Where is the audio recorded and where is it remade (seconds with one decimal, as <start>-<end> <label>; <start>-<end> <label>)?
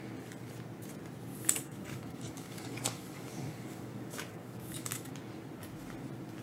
0.0-1.3 recorded; 1.3-5.1 remade; 5.1-6.4 recorded